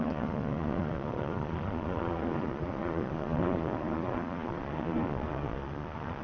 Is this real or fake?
fake